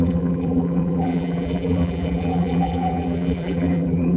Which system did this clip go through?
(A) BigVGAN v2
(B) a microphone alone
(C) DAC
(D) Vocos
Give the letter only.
A